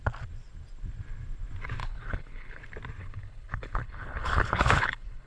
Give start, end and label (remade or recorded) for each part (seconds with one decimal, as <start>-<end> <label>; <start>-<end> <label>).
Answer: 0.0-1.8 recorded; 1.8-2.6 remade; 2.6-3.0 recorded; 3.0-5.3 remade